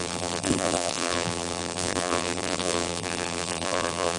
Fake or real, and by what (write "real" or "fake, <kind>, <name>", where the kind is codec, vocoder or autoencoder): fake, vocoder, BigVGAN v2